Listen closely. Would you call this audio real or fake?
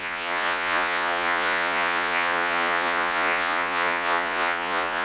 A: fake